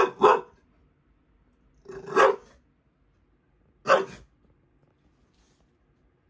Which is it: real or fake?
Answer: real